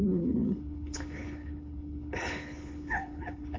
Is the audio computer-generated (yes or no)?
yes